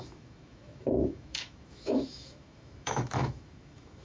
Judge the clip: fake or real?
fake